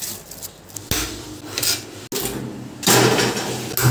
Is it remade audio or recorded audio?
recorded